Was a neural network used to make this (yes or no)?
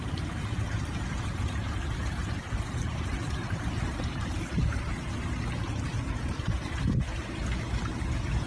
yes